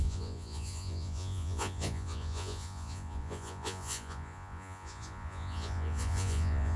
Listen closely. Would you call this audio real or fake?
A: fake